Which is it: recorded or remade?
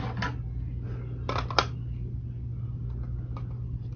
recorded